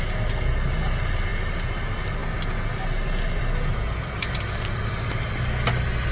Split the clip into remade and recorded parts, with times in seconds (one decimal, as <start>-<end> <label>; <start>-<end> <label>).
0.0-6.1 recorded